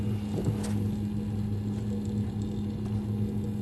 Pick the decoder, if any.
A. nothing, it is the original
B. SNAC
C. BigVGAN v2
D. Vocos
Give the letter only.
C